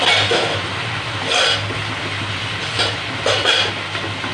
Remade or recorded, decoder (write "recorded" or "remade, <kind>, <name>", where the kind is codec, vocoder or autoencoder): recorded